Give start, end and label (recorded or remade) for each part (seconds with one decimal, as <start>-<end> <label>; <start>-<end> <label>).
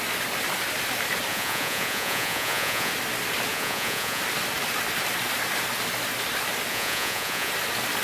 0.0-1.3 recorded; 1.3-2.9 remade; 2.9-3.5 recorded; 3.5-4.2 remade; 4.2-6.7 recorded; 6.7-7.5 remade; 7.5-8.0 recorded